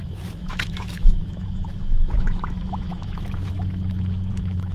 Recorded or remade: remade